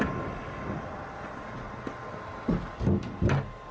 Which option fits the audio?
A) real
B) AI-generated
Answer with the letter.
A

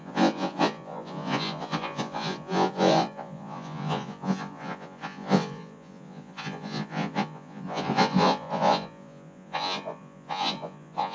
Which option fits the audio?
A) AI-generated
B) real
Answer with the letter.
A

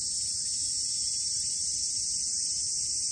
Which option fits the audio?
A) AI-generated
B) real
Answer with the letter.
A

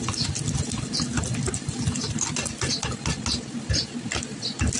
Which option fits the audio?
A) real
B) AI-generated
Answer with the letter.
A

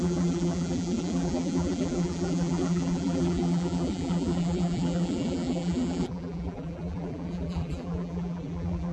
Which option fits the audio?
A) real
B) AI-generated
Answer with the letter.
B